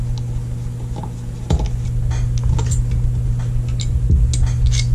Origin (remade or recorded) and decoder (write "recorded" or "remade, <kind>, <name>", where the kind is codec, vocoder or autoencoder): recorded